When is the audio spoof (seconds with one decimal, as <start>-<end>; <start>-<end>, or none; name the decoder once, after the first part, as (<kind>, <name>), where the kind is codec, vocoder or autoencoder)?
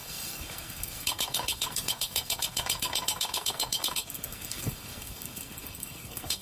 0.0-6.4 (codec, SNAC)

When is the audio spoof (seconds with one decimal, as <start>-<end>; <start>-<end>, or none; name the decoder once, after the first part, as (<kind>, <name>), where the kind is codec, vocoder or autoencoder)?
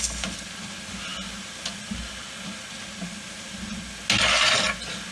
none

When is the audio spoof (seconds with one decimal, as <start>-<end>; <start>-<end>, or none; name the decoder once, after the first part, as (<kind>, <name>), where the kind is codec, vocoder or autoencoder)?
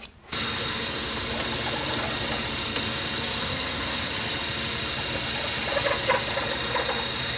3.4-4.1 (codec, SNAC)